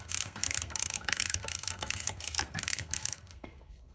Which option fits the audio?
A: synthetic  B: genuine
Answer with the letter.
A